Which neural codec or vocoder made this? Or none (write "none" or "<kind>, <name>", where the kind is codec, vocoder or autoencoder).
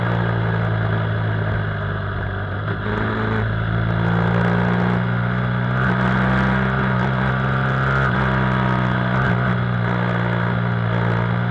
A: none